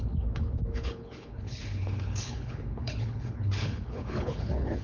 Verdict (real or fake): fake